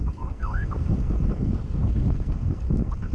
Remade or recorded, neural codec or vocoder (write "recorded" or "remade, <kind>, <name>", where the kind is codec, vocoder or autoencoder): remade, codec, SNAC